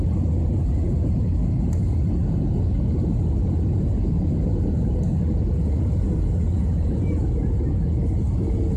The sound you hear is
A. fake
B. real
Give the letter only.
B